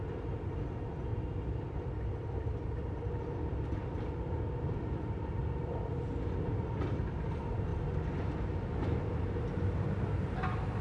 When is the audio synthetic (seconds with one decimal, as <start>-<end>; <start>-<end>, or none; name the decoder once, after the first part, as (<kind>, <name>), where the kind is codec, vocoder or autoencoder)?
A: none